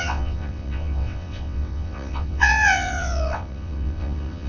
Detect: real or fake fake